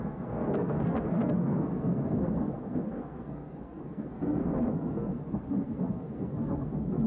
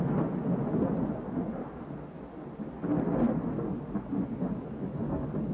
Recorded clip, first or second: second